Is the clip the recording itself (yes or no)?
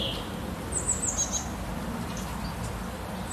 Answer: yes